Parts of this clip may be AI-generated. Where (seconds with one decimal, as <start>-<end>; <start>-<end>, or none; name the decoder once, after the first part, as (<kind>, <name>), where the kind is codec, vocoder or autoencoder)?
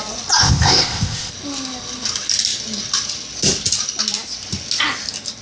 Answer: 0.4-1.3 (codec, ZipCodec)